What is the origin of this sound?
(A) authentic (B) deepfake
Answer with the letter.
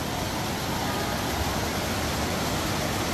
A